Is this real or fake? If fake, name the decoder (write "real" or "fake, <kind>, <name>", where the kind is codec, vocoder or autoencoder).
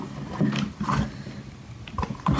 real